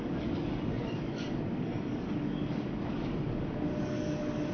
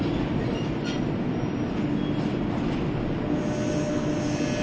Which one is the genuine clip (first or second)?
second